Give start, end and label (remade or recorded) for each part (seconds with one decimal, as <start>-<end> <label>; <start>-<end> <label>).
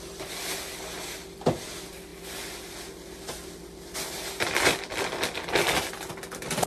0.0-6.7 recorded